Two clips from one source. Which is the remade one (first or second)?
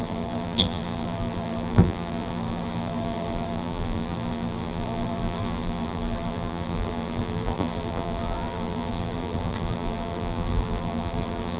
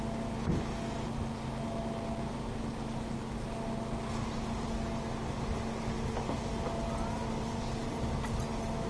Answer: first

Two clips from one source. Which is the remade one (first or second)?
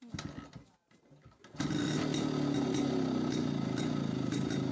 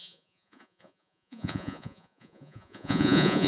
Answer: second